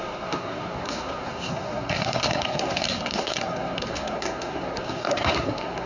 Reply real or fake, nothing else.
fake